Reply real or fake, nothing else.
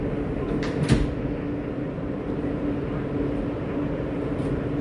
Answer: real